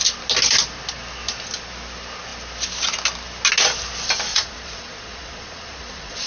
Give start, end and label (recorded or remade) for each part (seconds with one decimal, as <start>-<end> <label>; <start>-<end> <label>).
0.0-4.3 recorded; 4.3-6.3 remade